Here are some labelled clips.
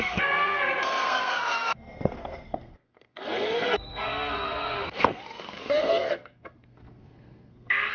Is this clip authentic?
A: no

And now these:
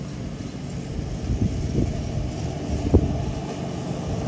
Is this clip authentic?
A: yes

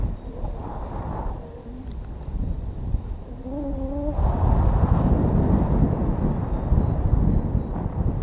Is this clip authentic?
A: yes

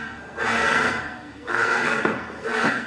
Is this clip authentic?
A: no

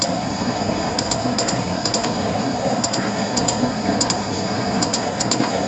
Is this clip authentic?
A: no